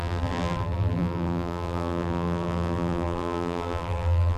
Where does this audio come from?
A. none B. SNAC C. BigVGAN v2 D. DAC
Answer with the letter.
C